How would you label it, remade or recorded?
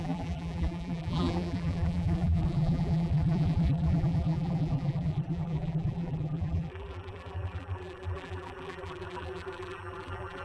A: remade